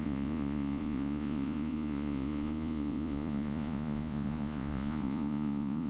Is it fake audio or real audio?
fake